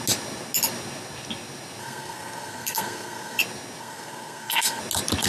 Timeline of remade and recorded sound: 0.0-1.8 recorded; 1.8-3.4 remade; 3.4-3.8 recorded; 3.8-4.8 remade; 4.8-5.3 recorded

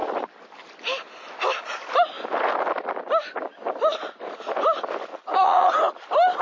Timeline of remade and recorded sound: 0.0-5.1 recorded; 5.1-5.7 remade; 5.7-6.4 recorded

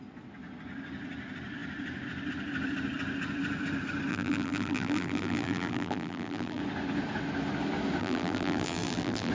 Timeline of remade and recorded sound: 0.0-4.1 recorded; 4.1-6.6 remade; 6.6-8.0 recorded; 8.0-9.3 remade

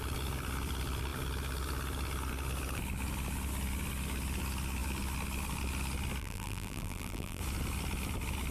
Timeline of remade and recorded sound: 0.0-6.2 recorded; 6.2-7.4 remade; 7.4-8.5 recorded

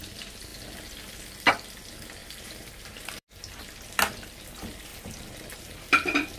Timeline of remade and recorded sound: 0.0-2.2 recorded; 2.2-3.6 remade; 3.6-4.9 recorded; 4.9-5.9 remade; 5.9-6.4 recorded

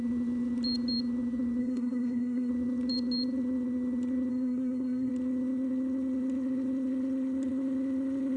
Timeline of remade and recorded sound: 0.0-1.6 recorded; 1.6-2.5 remade; 2.5-4.3 recorded; 4.3-5.1 remade; 5.1-8.4 recorded